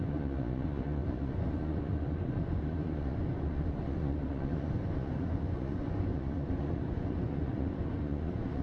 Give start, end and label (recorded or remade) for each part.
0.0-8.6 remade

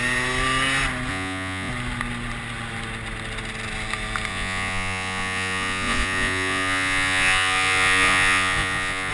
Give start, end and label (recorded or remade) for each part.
0.0-1.1 recorded; 1.1-1.7 remade; 1.7-4.3 recorded; 4.3-9.1 remade

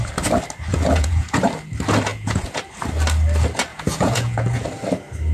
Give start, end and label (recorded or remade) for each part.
0.0-0.7 recorded; 0.7-1.4 remade; 1.4-2.1 recorded; 2.1-2.6 remade; 2.6-3.7 recorded; 3.7-4.6 remade; 4.6-5.3 recorded

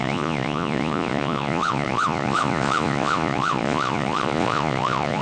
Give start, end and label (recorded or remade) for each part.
0.0-5.2 remade

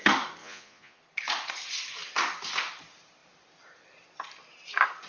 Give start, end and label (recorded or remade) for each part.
0.0-0.4 recorded; 0.4-1.0 remade; 1.0-5.1 recorded

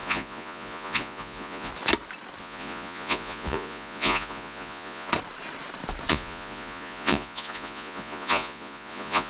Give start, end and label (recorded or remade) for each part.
0.0-1.7 remade; 1.7-2.4 recorded; 2.4-5.1 remade; 5.1-6.1 recorded; 6.1-9.3 remade

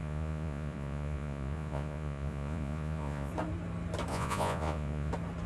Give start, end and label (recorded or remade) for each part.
0.0-3.3 remade; 3.3-4.1 recorded; 4.1-5.1 remade; 5.1-5.5 recorded